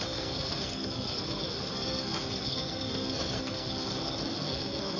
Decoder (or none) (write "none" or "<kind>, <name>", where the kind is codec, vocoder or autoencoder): codec, SNAC